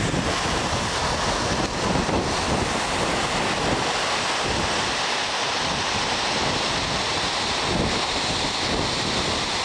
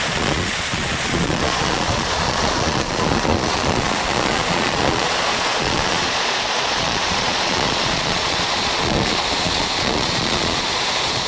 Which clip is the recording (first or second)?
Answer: first